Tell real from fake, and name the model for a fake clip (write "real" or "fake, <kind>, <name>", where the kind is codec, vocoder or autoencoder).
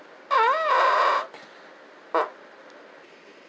real